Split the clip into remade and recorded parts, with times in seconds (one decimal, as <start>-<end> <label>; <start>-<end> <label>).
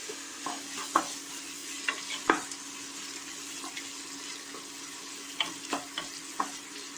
0.0-0.6 remade; 0.6-7.0 recorded